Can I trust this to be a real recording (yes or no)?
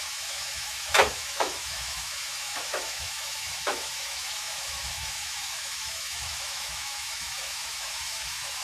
no